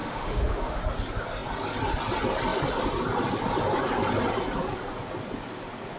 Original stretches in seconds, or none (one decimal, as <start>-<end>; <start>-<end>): 0.8-6.0